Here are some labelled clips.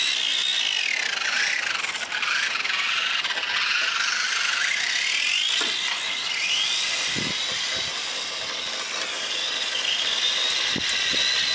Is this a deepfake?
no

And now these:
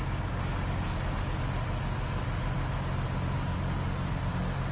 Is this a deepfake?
no